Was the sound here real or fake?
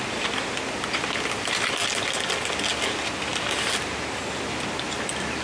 real